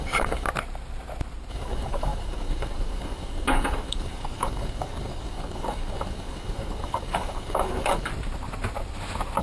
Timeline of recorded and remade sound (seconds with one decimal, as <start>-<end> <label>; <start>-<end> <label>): 0.0-0.5 remade; 0.5-1.5 recorded; 1.5-8.1 remade; 8.1-9.4 recorded